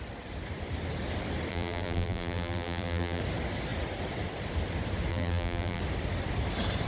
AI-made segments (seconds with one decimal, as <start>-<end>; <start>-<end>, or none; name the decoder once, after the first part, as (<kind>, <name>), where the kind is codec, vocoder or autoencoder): 1.5-3.2 (vocoder, BigVGAN v2); 5.1-5.8